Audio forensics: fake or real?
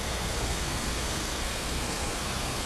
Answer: fake